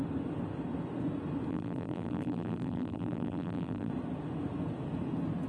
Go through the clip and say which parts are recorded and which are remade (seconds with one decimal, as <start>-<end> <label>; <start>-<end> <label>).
0.0-1.5 recorded; 1.5-3.9 remade; 3.9-5.5 recorded